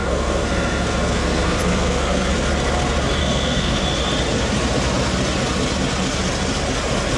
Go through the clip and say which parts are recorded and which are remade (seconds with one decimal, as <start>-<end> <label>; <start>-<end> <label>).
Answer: 0.0-2.3 remade; 2.3-3.2 recorded; 3.2-3.8 remade; 3.8-7.2 recorded